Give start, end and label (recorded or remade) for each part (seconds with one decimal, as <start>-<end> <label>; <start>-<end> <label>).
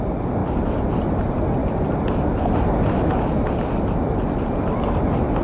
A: 0.0-5.4 recorded